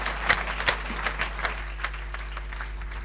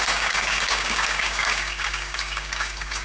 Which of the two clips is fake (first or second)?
second